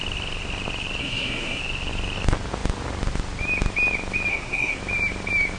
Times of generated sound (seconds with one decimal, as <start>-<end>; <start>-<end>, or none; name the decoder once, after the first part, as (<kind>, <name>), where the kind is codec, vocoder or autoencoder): 1.0-1.6 (codec, SNAC); 4.3-4.8

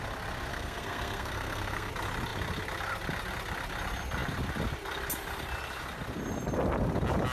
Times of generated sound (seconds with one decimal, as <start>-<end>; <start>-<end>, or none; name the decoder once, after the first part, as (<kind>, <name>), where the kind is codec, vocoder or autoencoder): 0.5-1.9 (codec, SNAC)

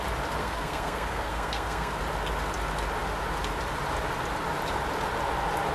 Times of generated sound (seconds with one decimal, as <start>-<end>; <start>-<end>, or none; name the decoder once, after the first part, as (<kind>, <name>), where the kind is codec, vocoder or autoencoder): 0.4-2.0 (codec, SNAC)

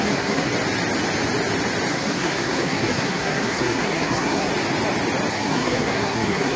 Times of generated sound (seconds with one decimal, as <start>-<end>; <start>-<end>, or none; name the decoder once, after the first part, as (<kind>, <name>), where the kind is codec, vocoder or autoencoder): 0.0-0.5 (codec, SNAC); 1.9-4.5; 5.3-6.6

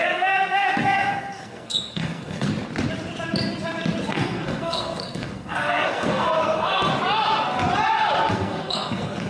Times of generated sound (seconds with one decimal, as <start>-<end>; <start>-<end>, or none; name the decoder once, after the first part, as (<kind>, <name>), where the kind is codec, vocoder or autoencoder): 0.0-2.5 (codec, SNAC); 4.1-6.9; 8.3-9.3

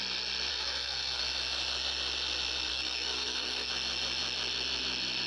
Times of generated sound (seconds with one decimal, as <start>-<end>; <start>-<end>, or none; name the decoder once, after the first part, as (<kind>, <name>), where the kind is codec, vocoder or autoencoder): 0.5-1.2 (codec, SNAC); 2.7-3.7